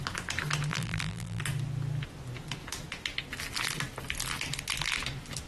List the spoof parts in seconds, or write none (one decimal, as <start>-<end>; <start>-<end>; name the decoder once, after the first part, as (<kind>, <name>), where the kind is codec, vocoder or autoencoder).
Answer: 0.7-1.4 (vocoder, BigVGAN v2)

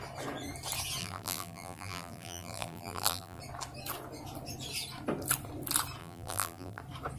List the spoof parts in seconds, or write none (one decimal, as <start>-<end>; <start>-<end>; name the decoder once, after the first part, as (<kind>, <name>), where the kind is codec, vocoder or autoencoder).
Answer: 1.0-3.4 (vocoder, BigVGAN v2); 6.0-6.8

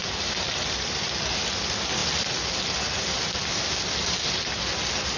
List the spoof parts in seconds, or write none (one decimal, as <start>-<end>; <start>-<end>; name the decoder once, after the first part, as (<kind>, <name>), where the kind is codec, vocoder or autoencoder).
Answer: none